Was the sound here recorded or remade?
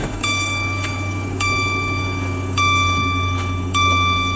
remade